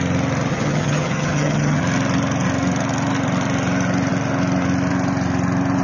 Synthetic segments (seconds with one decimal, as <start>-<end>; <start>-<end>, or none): 0.5-1.8